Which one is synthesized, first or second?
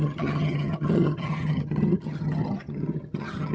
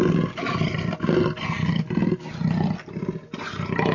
first